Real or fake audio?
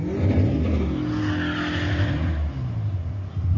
real